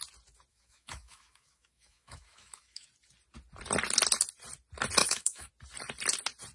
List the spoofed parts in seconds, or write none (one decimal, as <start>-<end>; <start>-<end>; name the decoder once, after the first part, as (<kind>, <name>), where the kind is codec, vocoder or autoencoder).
0.5-2.9 (autoencoder, DAC-VAE); 5.0-5.5